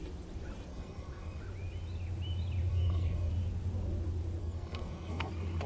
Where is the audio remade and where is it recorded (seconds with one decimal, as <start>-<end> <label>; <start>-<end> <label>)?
0.0-0.7 recorded; 0.7-1.4 remade; 1.4-2.7 recorded; 2.7-3.3 remade; 3.3-4.4 recorded; 4.4-5.3 remade; 5.3-5.7 recorded